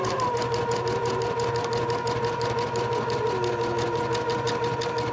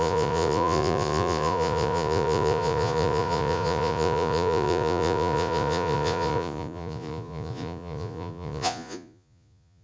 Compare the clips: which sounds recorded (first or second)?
first